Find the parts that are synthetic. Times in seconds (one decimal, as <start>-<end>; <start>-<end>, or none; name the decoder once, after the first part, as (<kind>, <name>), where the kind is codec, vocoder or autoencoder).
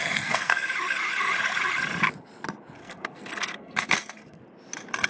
0.0-0.7 (codec, SNAC); 2.8-4.4